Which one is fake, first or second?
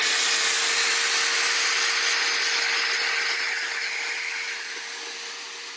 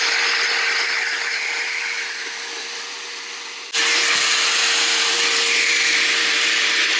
second